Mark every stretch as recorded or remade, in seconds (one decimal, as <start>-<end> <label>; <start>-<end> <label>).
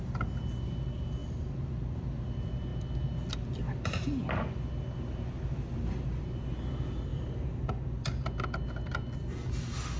0.0-10.0 recorded